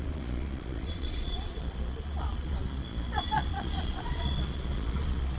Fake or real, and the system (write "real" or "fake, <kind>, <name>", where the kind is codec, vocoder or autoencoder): fake, vocoder, Vocos